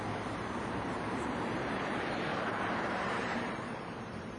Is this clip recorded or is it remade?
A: remade